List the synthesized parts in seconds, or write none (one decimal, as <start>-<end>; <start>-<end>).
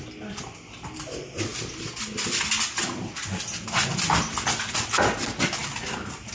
1.5-2.0